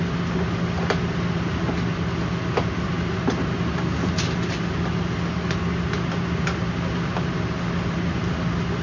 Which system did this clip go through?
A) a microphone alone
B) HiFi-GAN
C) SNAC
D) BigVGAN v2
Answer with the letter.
A